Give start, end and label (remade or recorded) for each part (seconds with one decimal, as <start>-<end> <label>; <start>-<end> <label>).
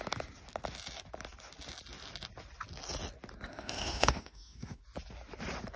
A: 0.0-3.5 recorded; 3.5-4.8 remade; 4.8-5.8 recorded